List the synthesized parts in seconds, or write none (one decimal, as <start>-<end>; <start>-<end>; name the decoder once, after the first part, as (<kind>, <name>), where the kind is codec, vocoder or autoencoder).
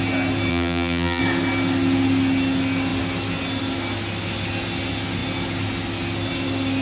0.5-1.2 (vocoder, BigVGAN v2)